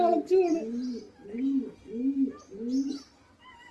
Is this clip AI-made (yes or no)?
no